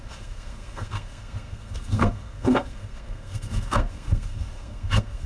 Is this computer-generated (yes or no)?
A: yes